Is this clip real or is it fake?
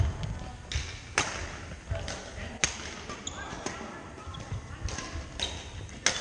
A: real